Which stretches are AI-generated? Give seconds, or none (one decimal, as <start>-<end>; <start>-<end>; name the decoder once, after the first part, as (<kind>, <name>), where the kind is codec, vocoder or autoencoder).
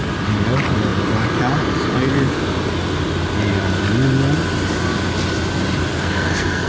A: 5.9-6.7 (codec, SNAC)